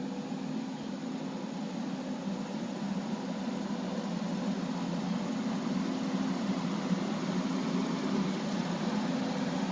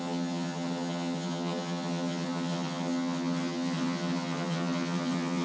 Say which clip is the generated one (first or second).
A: second